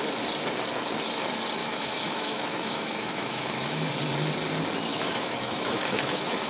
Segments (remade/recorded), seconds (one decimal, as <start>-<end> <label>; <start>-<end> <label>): 0.0-1.6 recorded; 1.6-3.9 remade; 3.9-4.9 recorded; 4.9-6.5 remade

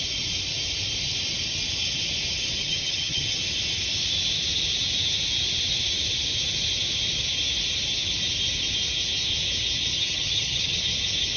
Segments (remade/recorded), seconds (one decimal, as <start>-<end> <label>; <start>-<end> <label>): 0.0-2.6 recorded; 2.6-3.4 remade; 3.4-9.9 recorded; 9.9-10.8 remade; 10.8-11.4 recorded

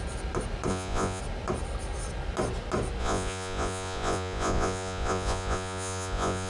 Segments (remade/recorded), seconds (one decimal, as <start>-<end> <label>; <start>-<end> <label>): 0.0-0.7 recorded; 0.7-1.2 remade; 1.2-3.0 recorded; 3.0-6.5 remade

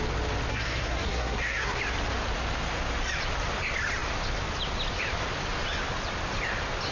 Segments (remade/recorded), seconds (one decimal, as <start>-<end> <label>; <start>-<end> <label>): 0.0-0.5 recorded; 0.5-1.8 remade; 1.8-6.9 recorded

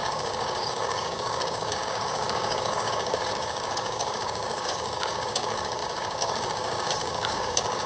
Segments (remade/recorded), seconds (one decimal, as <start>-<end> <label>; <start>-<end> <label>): 0.0-7.9 remade

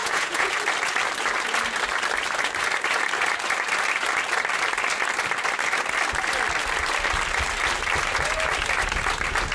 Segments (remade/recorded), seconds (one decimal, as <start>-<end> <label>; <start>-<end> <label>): 0.0-0.5 remade; 0.5-9.5 recorded

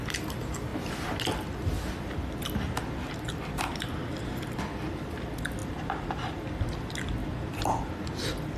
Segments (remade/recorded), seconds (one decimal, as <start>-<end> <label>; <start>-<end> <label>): 0.0-8.6 recorded

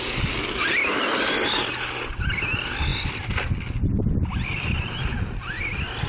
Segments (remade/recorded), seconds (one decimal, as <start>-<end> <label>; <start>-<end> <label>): 0.0-6.1 recorded